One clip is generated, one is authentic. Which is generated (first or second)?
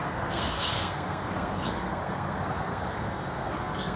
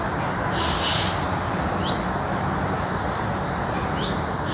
first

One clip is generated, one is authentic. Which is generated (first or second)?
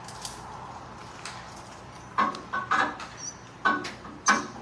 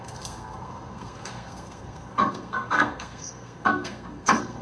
second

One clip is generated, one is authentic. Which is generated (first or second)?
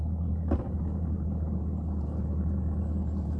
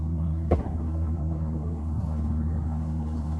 second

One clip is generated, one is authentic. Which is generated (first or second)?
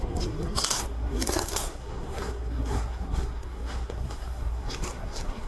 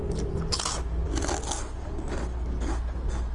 first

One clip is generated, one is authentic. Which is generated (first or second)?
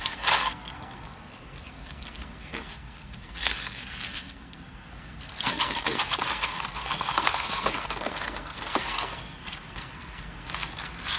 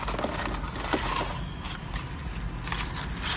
first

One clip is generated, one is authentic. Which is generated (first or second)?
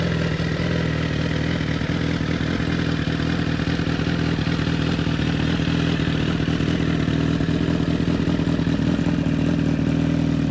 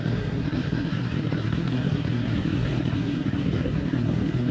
second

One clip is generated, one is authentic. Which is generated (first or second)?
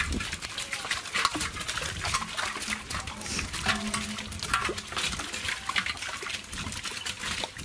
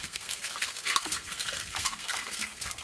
second